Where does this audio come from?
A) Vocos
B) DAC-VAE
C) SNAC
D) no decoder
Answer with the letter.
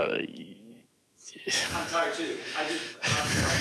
B